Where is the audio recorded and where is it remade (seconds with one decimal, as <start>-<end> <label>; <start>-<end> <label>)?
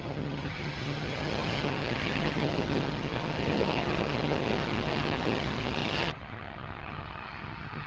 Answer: 0.0-7.9 remade